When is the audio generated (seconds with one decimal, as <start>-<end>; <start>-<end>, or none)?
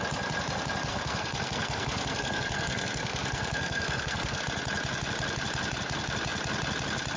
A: 0.9-4.4